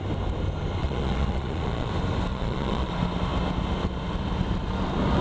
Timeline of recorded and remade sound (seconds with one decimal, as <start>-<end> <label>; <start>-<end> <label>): 0.0-0.8 recorded; 0.8-1.9 remade; 1.9-2.3 recorded; 2.3-2.9 remade; 2.9-5.2 recorded